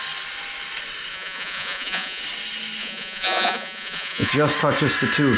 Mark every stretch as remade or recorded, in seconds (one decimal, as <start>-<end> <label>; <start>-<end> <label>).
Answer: 0.0-1.1 recorded; 1.1-2.2 remade; 2.2-2.8 recorded; 2.8-4.3 remade; 4.3-5.4 recorded